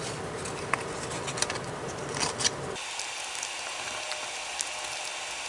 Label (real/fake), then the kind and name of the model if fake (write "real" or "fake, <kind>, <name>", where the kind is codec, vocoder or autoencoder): real